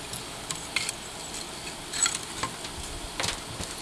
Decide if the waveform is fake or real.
real